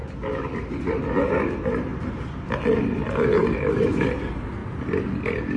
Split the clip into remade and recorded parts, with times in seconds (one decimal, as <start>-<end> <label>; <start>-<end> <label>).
0.0-1.9 recorded; 1.9-2.8 remade; 2.8-5.6 recorded